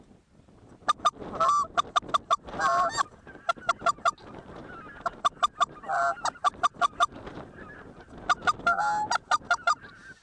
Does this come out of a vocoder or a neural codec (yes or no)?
no